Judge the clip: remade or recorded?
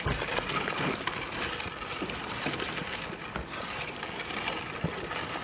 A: recorded